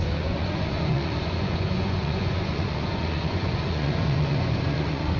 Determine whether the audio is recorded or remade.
remade